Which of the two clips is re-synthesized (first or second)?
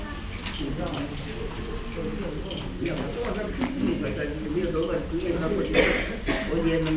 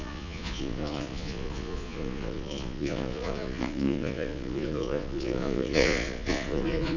second